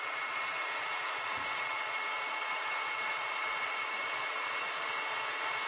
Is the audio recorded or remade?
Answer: remade